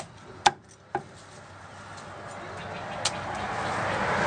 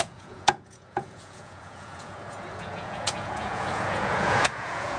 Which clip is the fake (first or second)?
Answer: second